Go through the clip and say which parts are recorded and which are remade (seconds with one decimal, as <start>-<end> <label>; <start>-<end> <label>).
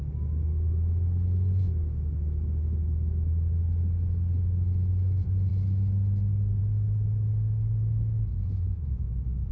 0.0-8.3 recorded; 8.3-9.5 remade